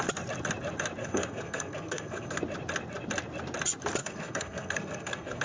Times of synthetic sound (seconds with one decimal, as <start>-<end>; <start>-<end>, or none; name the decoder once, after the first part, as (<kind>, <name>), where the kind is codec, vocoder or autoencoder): 1.0-2.4 (codec, SNAC); 4.0-5.4